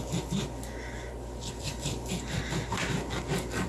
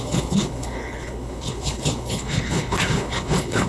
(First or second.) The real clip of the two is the first